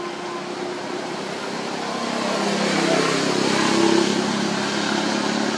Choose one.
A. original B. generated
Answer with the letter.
A